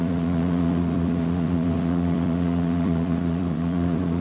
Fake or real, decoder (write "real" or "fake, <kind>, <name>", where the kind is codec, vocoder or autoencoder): fake, vocoder, Vocos